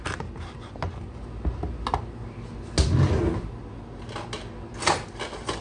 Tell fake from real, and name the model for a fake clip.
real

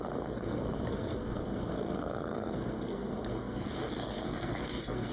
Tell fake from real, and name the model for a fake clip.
fake, codec, SNAC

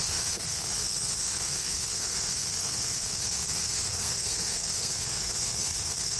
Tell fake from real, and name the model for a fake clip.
fake, codec, SNAC